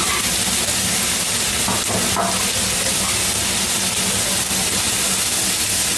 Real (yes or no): yes